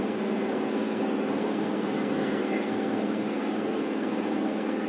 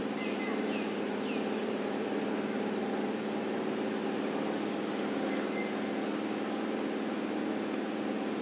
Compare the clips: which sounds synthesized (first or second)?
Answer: first